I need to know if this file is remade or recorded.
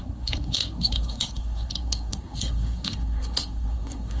remade